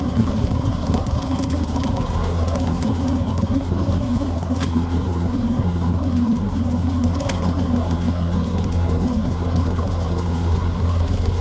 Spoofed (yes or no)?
yes